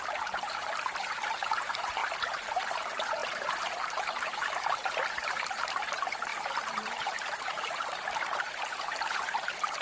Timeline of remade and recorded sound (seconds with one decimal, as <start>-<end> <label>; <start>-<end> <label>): 0.0-9.8 remade